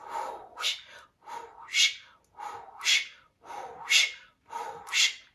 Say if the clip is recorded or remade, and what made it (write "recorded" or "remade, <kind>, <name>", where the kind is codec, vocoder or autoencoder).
recorded